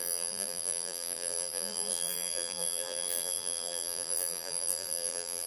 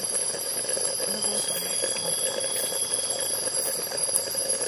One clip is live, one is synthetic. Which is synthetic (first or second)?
first